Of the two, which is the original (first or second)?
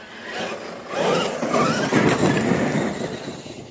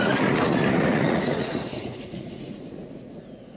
first